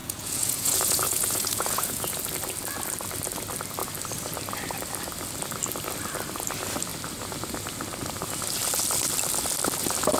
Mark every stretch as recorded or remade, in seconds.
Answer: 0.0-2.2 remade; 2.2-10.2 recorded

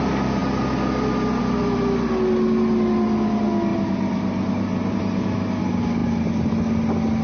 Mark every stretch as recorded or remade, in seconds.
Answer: 0.0-3.7 recorded; 3.7-5.0 remade; 5.0-6.0 recorded; 6.0-6.6 remade; 6.6-7.2 recorded

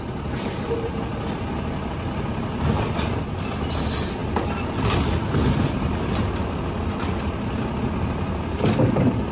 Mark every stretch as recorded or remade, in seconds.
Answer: 0.0-9.3 recorded

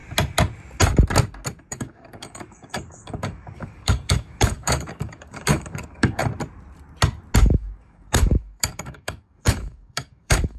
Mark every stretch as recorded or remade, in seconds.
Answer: 0.0-1.7 recorded; 1.7-6.2 remade; 6.2-7.4 recorded; 7.4-10.6 remade

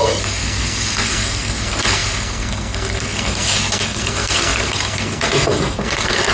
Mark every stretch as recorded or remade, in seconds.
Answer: 0.0-6.3 remade

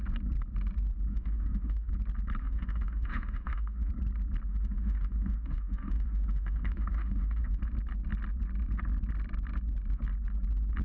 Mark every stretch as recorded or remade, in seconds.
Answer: 0.0-1.1 recorded; 1.1-1.9 remade; 1.9-2.4 recorded; 2.4-3.9 remade; 3.9-4.5 recorded; 4.5-7.6 remade; 7.6-10.8 recorded